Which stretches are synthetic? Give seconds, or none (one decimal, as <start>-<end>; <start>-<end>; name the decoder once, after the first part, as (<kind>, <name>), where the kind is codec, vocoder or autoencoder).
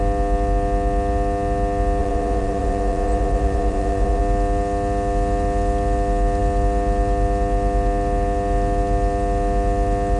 2.0-4.2 (vocoder, Vocos)